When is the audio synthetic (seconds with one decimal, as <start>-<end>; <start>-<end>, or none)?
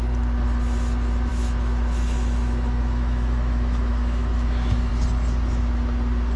1.3-4.9